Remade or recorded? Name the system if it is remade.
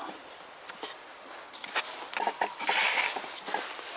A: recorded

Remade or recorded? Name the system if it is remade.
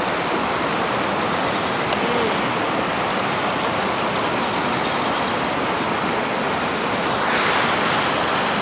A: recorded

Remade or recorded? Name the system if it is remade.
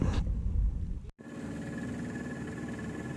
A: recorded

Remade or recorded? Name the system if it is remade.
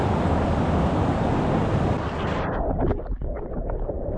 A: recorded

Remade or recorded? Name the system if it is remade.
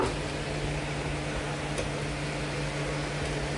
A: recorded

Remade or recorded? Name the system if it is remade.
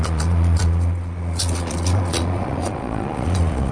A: remade, vocoder, Vocos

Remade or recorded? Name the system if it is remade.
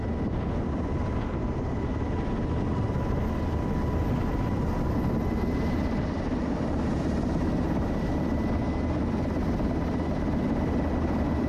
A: recorded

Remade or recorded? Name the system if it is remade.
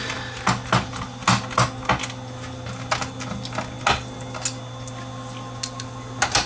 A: recorded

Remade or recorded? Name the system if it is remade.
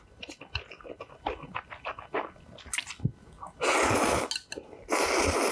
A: recorded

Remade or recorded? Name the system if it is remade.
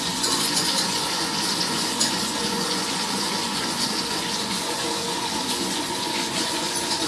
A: remade, vocoder, Vocos